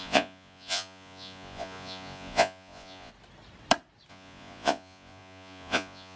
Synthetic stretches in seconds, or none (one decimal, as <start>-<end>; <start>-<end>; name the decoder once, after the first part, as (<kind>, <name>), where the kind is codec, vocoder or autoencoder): 0.0-3.1 (vocoder, Vocos); 4.1-6.2